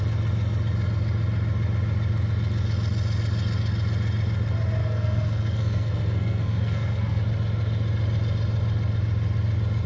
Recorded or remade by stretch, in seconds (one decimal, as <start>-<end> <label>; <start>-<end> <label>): 0.0-4.8 recorded; 4.8-7.2 remade; 7.2-9.9 recorded